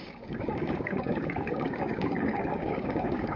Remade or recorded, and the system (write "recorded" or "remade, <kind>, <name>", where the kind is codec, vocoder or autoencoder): remade, codec, DAC